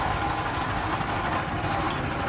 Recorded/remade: recorded